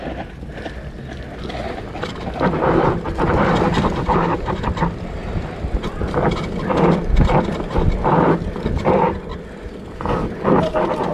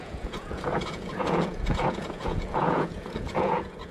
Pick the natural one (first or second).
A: first